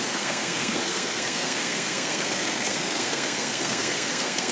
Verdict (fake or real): fake